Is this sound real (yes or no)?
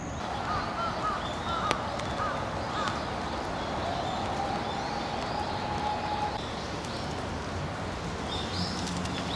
yes